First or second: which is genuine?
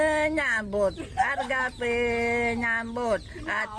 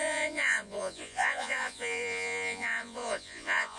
first